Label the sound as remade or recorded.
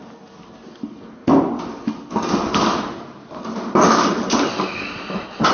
recorded